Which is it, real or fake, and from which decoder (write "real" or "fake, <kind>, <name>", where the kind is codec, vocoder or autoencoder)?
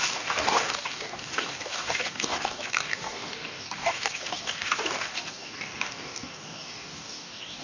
fake, codec, DAC